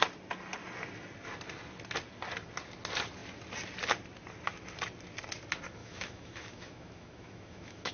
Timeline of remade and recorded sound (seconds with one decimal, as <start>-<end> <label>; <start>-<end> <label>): 0.0-5.8 recorded; 5.8-7.9 remade